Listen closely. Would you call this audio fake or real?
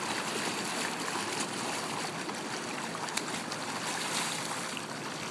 fake